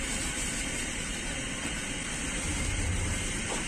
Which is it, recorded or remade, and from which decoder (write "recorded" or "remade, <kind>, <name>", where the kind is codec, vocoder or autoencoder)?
recorded